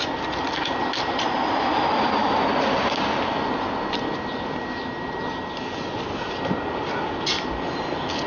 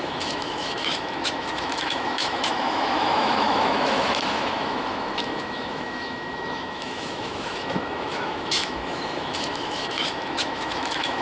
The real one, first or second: first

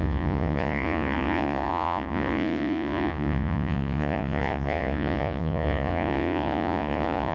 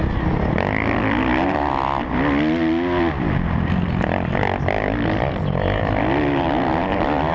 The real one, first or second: second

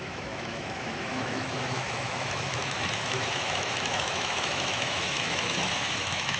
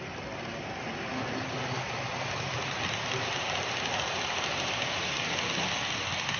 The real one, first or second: second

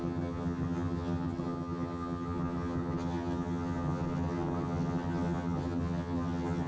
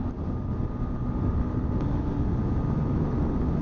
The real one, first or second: second